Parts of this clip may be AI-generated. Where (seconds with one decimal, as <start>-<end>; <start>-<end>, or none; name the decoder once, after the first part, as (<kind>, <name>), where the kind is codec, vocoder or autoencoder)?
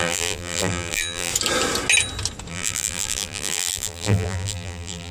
0.0-1.3 (vocoder, BigVGAN v2); 2.5-5.1